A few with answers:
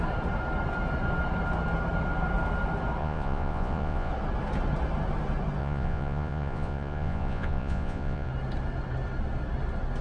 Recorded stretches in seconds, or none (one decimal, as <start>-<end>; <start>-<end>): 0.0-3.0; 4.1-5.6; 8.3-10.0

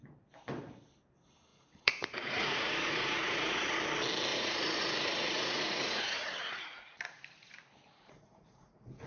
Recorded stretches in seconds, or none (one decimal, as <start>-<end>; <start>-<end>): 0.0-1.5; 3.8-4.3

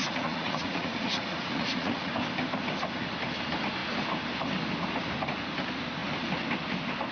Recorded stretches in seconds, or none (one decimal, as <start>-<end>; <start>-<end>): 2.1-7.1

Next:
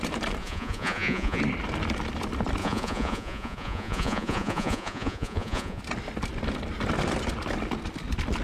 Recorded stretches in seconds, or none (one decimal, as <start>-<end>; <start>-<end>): 0.0-0.4; 1.4-2.6; 5.8-8.4

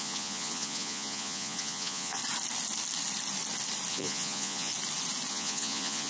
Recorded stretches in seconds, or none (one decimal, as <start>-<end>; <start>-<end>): 2.2-3.9; 4.7-5.3